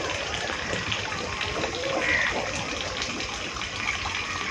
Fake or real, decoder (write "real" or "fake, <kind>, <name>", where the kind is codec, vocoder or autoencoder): real